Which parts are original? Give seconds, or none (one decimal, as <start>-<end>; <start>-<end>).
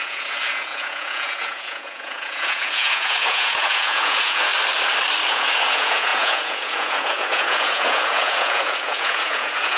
4.5-5.3